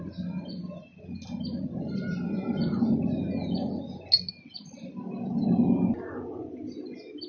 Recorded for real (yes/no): yes